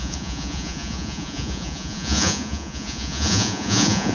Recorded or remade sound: remade